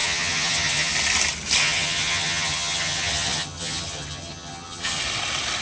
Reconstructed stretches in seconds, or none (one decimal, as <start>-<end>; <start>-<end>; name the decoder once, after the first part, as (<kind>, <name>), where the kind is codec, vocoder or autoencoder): 0.0-0.9 (vocoder, HiFi-GAN); 1.6-5.0